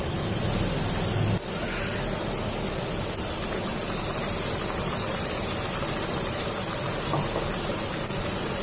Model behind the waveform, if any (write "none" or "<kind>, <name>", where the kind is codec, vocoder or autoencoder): none